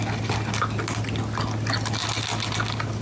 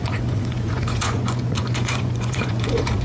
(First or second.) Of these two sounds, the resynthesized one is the second